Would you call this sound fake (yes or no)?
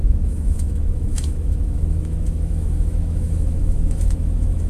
yes